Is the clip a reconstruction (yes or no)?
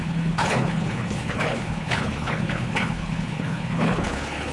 yes